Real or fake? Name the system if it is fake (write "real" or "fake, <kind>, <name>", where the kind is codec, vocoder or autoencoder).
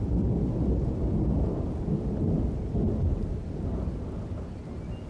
real